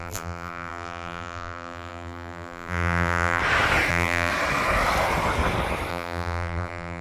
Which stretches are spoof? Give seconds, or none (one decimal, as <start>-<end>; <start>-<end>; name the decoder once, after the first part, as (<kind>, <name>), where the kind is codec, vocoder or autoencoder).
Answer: 0.0-3.4 (vocoder, BigVGAN v2); 3.9-4.3; 5.9-7.0